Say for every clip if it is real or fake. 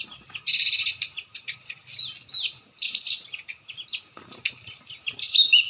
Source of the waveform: real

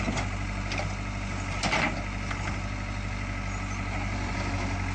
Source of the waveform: real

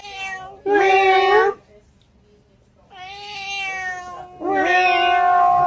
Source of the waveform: real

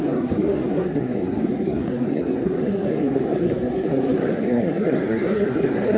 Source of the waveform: fake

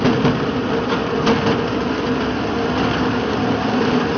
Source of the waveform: real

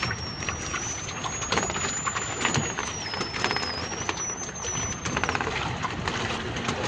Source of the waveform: real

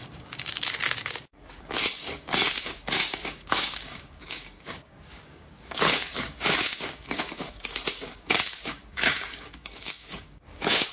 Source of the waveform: fake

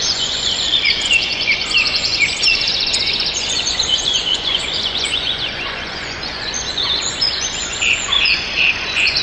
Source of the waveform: fake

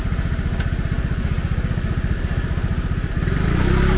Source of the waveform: real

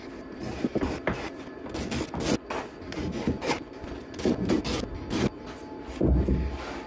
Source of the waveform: real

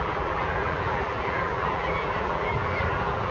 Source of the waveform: fake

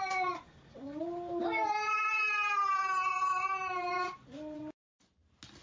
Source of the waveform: real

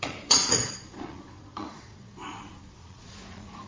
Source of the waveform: fake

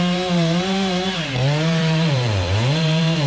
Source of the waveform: fake